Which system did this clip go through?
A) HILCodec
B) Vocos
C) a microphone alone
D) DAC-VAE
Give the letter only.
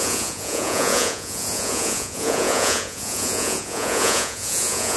B